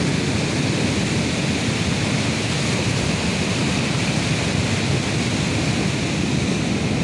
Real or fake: real